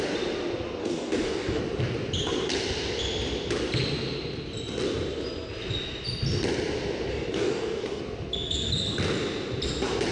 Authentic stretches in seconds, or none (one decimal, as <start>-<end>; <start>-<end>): 0.0-0.8; 1.6-7.1; 8.0-10.1